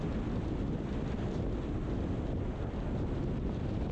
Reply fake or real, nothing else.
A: real